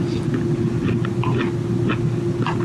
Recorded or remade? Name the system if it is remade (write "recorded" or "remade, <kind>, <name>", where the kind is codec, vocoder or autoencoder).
recorded